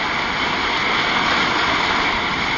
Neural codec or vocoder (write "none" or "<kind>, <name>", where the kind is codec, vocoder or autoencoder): none